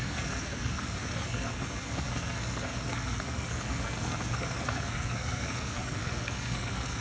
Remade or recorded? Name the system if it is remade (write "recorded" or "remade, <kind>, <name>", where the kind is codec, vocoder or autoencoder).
remade, codec, SNAC